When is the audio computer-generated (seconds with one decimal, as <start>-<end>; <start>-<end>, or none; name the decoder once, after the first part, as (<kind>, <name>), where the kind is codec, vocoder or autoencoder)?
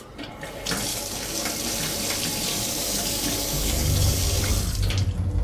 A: 0.9-1.5 (codec, DAC); 2.5-4.5